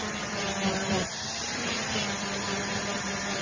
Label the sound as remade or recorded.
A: remade